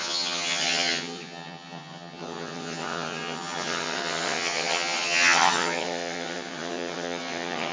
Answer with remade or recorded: remade